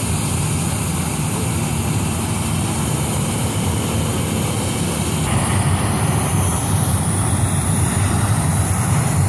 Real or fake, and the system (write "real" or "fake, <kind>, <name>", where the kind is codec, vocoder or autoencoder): real